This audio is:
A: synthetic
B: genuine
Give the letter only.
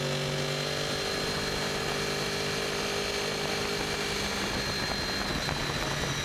B